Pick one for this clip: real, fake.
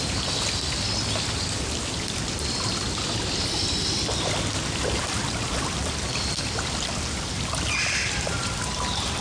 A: real